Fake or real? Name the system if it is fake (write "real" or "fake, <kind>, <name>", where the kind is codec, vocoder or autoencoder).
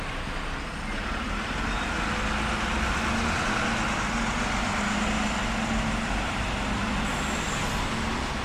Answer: real